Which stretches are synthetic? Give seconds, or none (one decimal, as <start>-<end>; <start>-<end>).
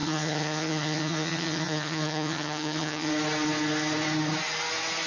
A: 0.0-3.1